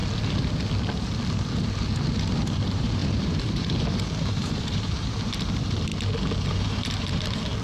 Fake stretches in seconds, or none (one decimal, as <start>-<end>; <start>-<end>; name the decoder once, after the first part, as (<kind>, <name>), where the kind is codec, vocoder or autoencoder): 2.3-5.9 (vocoder, BigVGAN v2); 6.6-7.6